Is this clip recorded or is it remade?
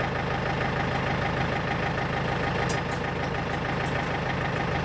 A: recorded